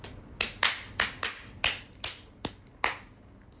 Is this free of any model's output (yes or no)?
yes